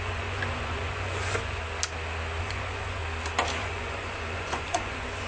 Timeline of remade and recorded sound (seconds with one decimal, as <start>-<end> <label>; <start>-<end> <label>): 0.0-1.6 remade; 1.6-2.4 recorded; 2.4-3.0 remade; 3.0-3.6 recorded; 3.6-5.3 remade